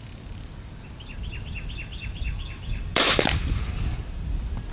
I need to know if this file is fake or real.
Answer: real